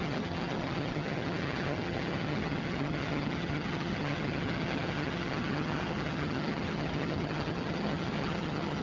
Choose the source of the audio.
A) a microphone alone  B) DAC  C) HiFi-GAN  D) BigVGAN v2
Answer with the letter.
C